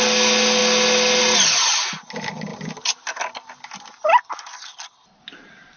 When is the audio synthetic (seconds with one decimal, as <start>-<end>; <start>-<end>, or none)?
none